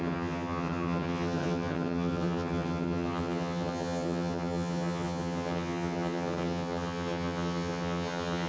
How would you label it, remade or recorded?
remade